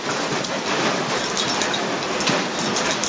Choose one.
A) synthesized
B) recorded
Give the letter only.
B